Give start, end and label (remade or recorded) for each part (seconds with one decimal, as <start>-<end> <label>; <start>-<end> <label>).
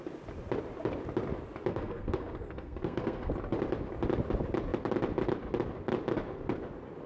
0.0-1.7 recorded; 1.7-3.3 remade; 3.3-7.1 recorded